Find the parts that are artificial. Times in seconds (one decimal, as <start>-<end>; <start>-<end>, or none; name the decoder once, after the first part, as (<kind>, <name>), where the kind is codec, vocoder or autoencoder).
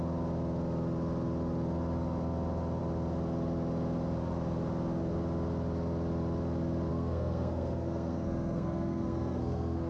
6.9-9.9 (codec, SNAC)